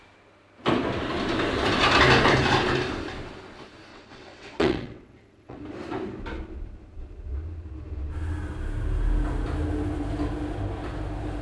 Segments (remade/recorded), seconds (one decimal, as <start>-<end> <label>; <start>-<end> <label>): 0.0-3.9 recorded; 3.9-5.6 remade; 5.6-11.4 recorded